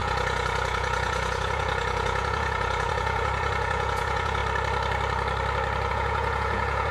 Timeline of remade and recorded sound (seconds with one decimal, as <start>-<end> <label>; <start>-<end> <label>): 0.0-4.4 remade; 4.4-5.9 recorded; 5.9-6.9 remade